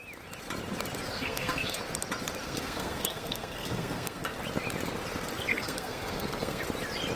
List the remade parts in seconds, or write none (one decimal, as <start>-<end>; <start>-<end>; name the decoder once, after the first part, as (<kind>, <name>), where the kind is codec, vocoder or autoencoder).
1.1-1.8 (codec, SNAC); 2.4-4.4; 5.5-6.6